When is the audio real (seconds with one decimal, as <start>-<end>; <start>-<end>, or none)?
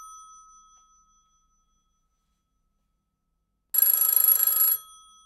0.0-5.3